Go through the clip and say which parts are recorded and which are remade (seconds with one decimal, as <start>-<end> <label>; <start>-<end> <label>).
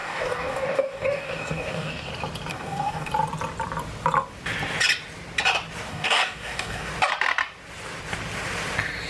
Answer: 0.0-2.1 remade; 2.1-2.5 recorded; 2.5-3.1 remade; 3.1-5.9 recorded; 5.9-6.9 remade; 6.9-9.1 recorded